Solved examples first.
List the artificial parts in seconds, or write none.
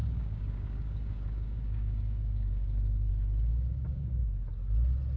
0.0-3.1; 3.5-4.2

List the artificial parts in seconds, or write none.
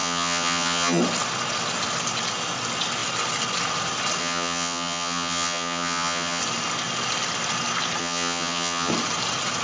0.0-1.0; 4.2-6.4; 8.0-8.9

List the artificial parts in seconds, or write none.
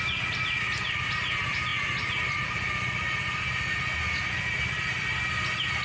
none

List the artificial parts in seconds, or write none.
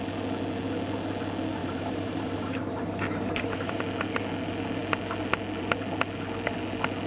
1.6-3.8